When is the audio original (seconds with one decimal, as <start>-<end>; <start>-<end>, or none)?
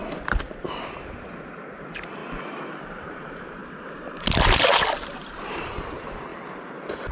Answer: 0.0-1.7; 2.2-2.8; 3.6-4.6